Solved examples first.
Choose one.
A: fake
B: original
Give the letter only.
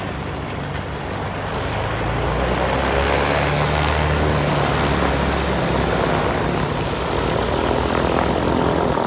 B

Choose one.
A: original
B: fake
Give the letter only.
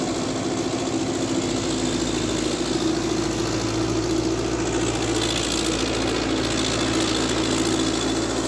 A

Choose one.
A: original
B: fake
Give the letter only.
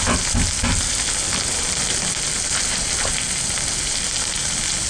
A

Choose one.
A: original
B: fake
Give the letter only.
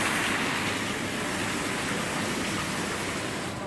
A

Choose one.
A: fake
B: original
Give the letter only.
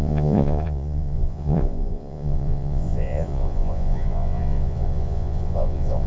A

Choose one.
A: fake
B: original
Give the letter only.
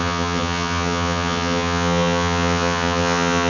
A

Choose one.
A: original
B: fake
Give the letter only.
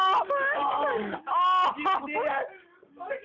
A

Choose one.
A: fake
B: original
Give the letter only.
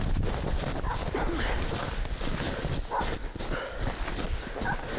B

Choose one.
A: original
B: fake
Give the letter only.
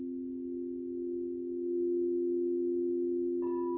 A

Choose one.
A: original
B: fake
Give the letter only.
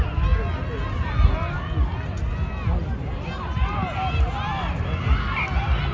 A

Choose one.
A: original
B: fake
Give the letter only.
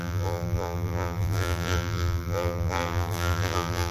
B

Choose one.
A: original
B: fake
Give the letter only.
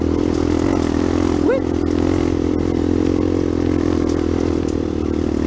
A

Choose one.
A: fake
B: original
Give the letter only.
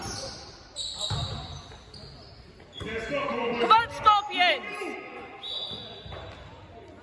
B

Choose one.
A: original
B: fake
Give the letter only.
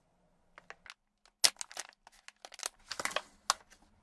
A